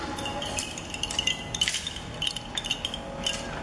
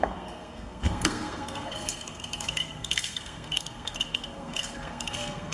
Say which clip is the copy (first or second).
second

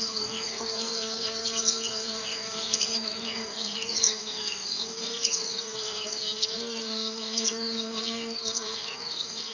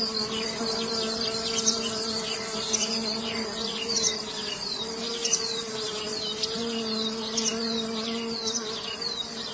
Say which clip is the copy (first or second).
first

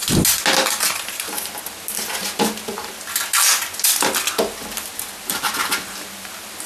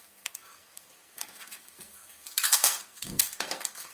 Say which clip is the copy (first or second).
second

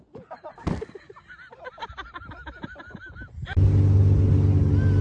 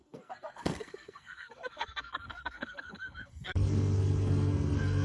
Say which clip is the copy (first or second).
second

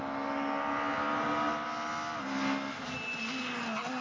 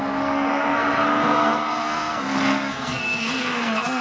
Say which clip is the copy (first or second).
second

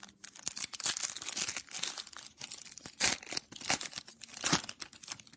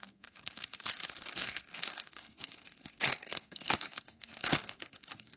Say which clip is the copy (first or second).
second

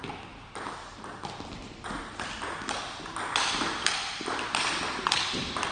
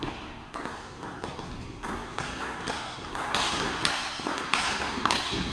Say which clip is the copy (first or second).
second